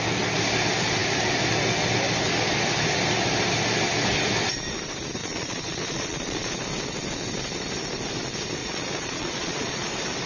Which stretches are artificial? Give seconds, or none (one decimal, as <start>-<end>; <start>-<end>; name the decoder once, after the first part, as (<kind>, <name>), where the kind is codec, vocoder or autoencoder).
5.2-6.6 (vocoder, Vocos); 8.6-9.9